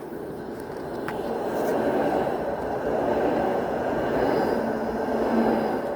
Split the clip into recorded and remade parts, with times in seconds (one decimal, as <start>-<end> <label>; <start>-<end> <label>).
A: 0.0-3.5 recorded; 3.5-4.6 remade; 4.6-6.0 recorded